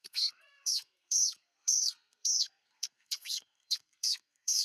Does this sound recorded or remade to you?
remade